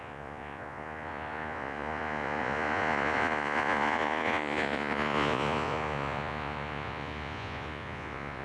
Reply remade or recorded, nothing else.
remade